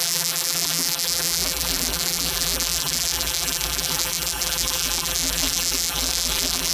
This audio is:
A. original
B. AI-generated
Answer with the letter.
B